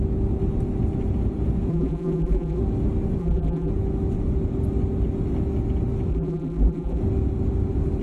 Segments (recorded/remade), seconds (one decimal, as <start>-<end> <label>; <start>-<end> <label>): 0.0-1.7 recorded; 1.7-2.6 remade; 2.6-3.2 recorded; 3.2-3.7 remade; 3.7-6.1 recorded; 6.1-7.0 remade; 7.0-8.0 recorded